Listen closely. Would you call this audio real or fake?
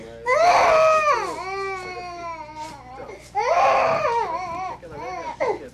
real